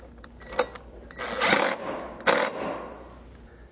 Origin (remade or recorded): recorded